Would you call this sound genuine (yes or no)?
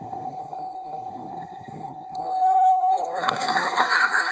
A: no